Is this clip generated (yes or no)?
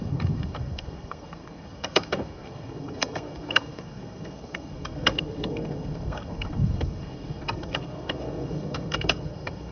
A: yes